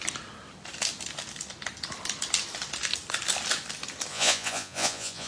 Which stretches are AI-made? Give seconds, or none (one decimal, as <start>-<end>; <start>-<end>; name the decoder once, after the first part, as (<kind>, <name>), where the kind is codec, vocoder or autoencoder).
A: 4.1-5.3 (vocoder, Vocos)